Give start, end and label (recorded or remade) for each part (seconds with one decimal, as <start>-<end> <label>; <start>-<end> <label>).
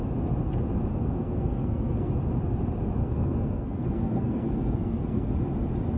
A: 0.0-0.9 recorded; 0.9-2.1 remade; 2.1-3.0 recorded; 3.0-5.3 remade; 5.3-6.0 recorded